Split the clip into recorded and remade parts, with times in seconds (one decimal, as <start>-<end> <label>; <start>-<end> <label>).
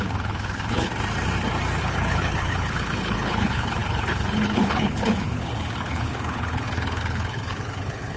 0.0-0.9 remade; 0.9-1.8 recorded; 1.8-8.2 remade